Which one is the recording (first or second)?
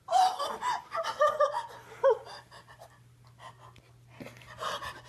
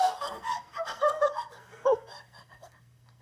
first